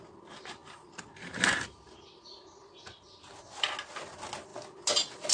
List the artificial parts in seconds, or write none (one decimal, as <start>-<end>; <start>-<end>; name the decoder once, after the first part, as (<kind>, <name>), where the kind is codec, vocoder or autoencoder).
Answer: none